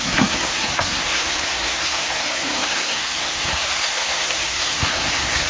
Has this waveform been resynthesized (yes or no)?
yes